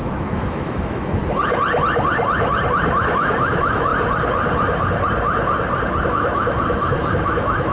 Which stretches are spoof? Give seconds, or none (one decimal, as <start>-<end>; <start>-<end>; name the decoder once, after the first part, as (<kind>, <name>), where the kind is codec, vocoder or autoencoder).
0.0-1.2 (autoencoder, DAC-VAE); 3.0-3.9; 6.1-7.7